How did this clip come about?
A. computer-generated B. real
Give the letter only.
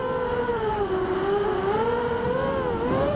B